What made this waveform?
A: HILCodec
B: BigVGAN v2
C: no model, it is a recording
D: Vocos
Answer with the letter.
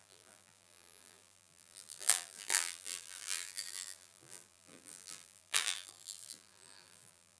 B